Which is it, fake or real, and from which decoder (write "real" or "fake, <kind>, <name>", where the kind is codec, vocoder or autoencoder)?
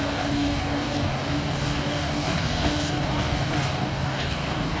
fake, codec, DAC